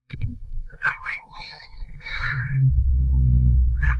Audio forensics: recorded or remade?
remade